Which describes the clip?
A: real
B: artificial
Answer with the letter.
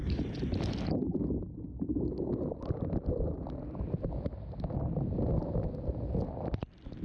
A